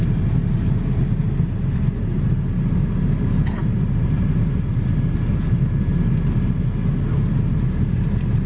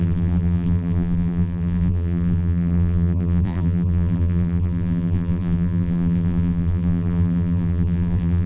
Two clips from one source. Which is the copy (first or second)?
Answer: second